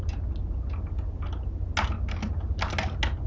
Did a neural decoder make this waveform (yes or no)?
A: no